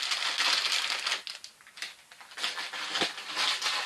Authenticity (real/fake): real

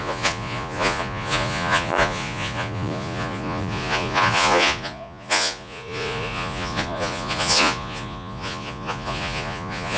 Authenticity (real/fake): fake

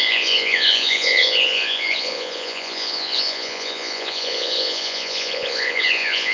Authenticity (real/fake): fake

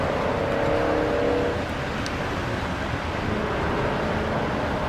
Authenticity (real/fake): real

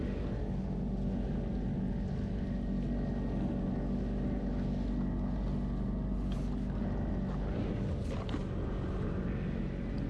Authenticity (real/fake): real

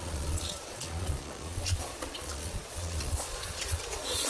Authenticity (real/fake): fake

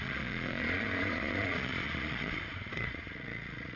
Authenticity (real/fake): fake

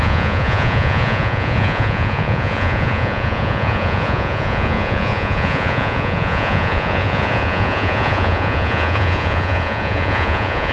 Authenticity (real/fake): fake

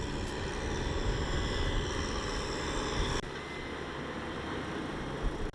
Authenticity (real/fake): real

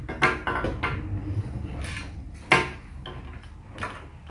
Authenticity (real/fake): real